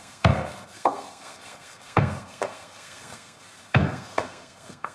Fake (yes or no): yes